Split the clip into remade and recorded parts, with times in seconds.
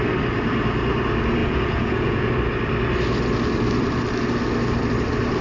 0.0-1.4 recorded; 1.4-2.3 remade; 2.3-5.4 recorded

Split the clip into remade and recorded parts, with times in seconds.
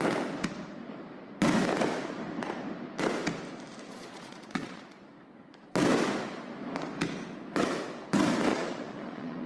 0.0-3.9 recorded; 3.9-5.0 remade; 5.0-8.5 recorded; 8.5-9.5 remade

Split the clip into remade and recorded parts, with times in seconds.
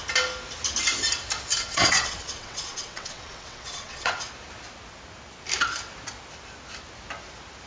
0.0-1.5 recorded; 1.5-4.3 remade; 4.3-7.7 recorded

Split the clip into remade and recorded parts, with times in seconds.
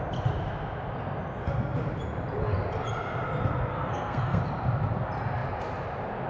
0.0-3.7 recorded; 3.7-4.4 remade; 4.4-6.3 recorded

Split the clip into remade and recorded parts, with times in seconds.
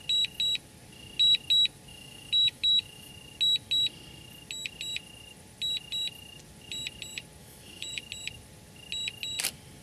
0.0-1.9 recorded; 1.9-3.1 remade; 3.1-7.4 recorded; 7.4-8.0 remade; 8.0-9.8 recorded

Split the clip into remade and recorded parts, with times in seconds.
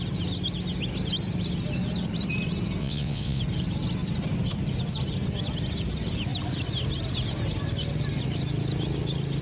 0.0-2.8 recorded; 2.8-3.4 remade; 3.4-9.4 recorded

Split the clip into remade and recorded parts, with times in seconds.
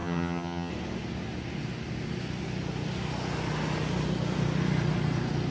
0.0-0.7 remade; 0.7-5.5 recorded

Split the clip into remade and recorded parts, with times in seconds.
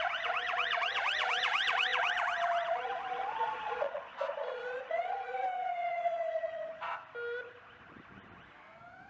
0.0-6.9 remade; 6.9-9.1 recorded